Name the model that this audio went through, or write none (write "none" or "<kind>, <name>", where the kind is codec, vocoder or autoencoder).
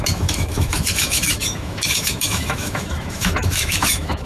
autoencoder, DAC-VAE